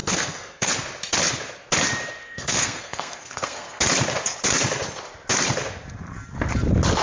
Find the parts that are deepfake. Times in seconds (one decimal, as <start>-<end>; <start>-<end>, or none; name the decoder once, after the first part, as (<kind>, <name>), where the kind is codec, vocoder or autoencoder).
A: 0.0-0.7 (codec, SNAC); 2.2-3.8